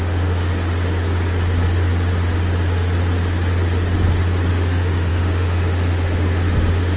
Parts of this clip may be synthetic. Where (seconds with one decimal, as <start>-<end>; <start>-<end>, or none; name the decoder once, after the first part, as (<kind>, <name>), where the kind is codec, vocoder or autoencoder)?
0.0-0.5 (autoencoder, DAC-VAE); 4.5-7.0